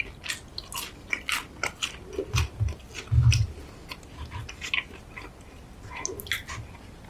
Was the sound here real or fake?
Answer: real